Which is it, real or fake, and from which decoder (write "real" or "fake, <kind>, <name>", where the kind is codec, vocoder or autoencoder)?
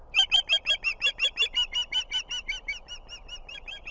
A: real